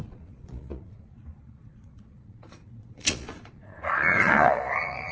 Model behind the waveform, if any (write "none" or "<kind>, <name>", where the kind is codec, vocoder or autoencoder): vocoder, Vocos